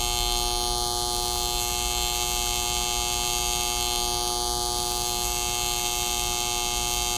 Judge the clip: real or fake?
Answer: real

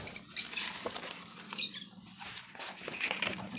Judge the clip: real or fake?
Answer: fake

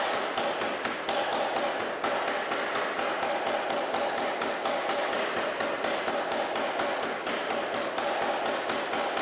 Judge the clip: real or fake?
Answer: real